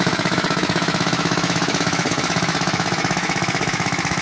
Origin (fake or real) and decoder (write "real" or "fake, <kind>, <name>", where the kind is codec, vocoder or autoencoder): fake, autoencoder, DAC-VAE